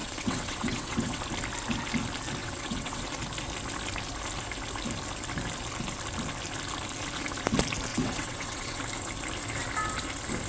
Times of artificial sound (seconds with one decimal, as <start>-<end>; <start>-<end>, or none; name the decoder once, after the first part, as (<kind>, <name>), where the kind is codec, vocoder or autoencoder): 0.0-1.2 (vocoder, WaveNeXt); 2.4-3.0; 7.9-8.8